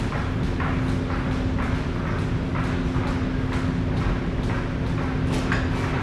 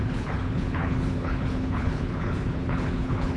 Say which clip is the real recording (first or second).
first